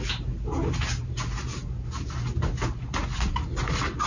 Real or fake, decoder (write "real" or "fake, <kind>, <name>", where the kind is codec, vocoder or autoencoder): real